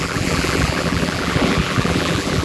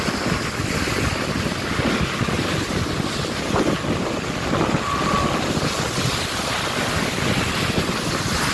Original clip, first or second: second